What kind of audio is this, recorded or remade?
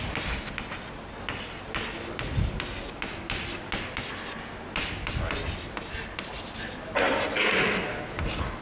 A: recorded